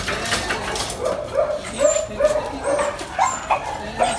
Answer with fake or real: real